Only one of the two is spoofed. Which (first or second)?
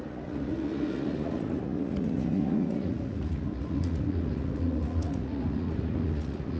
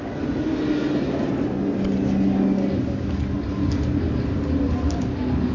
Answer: first